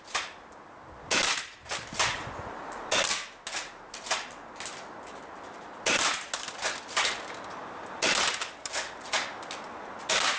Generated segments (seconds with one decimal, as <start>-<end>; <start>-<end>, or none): none